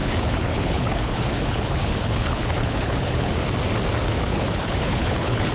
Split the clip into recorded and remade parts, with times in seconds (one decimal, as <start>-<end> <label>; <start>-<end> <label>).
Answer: 0.0-3.3 remade; 3.3-4.3 recorded; 4.3-5.5 remade